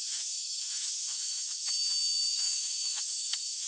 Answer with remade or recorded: remade